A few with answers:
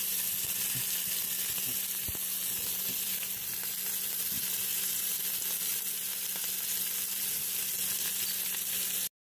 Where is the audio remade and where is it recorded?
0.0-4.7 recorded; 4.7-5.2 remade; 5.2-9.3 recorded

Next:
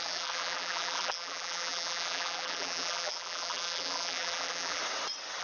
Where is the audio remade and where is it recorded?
0.0-4.8 remade; 4.8-5.4 recorded

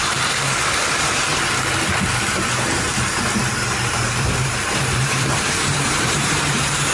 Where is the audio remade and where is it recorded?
0.0-1.3 remade; 1.3-2.2 recorded; 2.2-6.9 remade